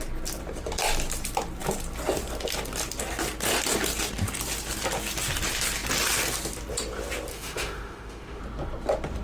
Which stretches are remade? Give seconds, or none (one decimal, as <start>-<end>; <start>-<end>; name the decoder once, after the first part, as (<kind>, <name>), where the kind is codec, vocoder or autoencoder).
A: 7.3-8.4 (autoencoder, DAC-VAE)

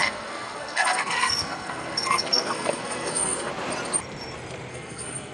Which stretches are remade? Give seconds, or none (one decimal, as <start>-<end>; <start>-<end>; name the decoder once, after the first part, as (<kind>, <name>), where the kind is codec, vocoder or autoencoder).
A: 0.0-3.5 (codec, SNAC); 4.7-5.3